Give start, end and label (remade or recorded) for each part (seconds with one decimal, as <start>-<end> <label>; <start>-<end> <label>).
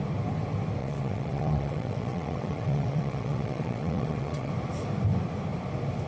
0.0-0.8 recorded; 0.8-4.5 remade; 4.5-6.1 recorded